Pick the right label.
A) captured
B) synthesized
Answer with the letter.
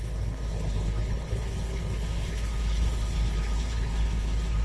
B